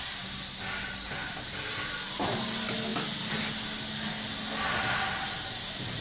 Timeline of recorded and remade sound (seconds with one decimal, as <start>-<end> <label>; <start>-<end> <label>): 0.0-6.0 recorded